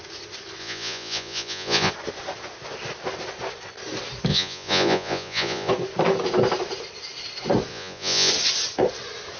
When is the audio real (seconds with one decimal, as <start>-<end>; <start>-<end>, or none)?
0.0-0.6; 1.9-4.3; 5.7-7.7; 8.3-9.4